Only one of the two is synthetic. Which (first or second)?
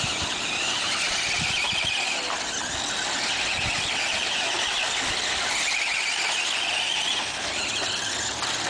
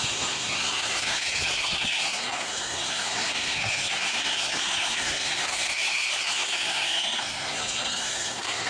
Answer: second